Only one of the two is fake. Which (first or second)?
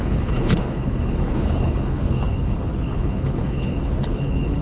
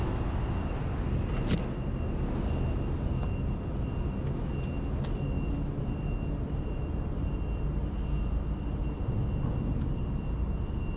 first